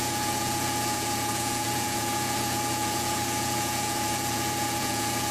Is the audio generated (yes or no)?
yes